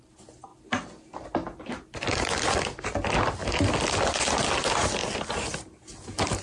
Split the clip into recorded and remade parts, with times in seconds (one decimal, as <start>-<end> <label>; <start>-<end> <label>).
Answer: 0.0-6.4 recorded